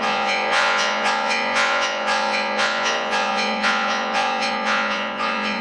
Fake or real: fake